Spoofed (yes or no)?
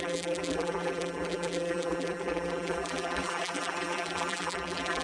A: yes